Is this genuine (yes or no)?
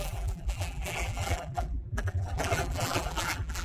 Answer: no